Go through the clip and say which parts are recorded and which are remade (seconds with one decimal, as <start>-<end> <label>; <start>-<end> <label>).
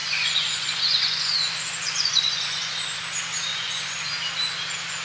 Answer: 0.0-3.0 remade; 3.0-3.5 recorded; 3.5-4.1 remade; 4.1-5.0 recorded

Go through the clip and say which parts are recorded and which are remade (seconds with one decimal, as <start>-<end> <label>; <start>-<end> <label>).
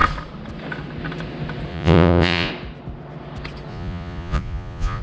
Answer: 0.0-1.7 recorded; 1.7-2.5 remade; 2.5-3.7 recorded; 3.7-5.0 remade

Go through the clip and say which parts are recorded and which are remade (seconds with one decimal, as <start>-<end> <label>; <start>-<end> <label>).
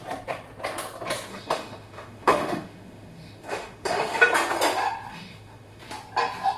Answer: 0.0-1.3 recorded; 1.3-4.2 remade; 4.2-5.1 recorded; 5.1-5.8 remade; 5.8-6.6 recorded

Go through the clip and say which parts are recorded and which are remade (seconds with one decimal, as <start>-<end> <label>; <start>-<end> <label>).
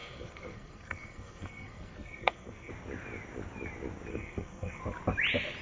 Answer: 0.0-2.7 remade; 2.7-4.1 recorded; 4.1-4.8 remade; 4.8-5.6 recorded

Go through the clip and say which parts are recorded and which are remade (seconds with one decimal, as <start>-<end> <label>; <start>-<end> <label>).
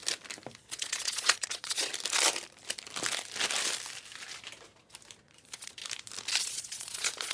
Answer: 0.0-0.7 recorded; 0.7-1.9 remade; 1.9-5.2 recorded; 5.2-5.8 remade; 5.8-6.4 recorded; 6.4-7.3 remade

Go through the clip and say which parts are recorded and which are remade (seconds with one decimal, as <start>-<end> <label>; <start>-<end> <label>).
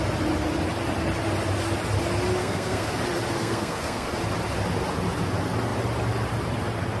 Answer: 0.0-2.4 recorded; 2.4-2.9 remade; 2.9-3.4 recorded; 3.4-4.1 remade; 4.1-7.0 recorded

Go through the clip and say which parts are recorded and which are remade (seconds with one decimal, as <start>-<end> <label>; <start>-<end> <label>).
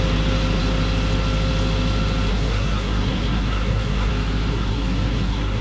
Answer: 0.0-2.3 recorded; 2.3-4.1 remade; 4.1-4.5 recorded; 4.5-5.6 remade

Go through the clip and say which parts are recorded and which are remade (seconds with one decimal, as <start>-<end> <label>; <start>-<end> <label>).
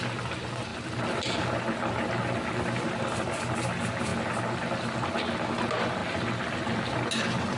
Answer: 0.0-7.6 recorded